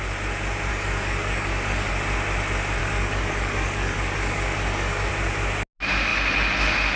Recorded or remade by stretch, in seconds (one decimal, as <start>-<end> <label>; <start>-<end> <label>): 0.0-0.7 recorded; 0.7-1.9 remade; 1.9-2.8 recorded; 2.8-5.1 remade; 5.1-7.0 recorded